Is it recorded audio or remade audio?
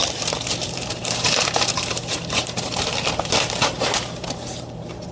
remade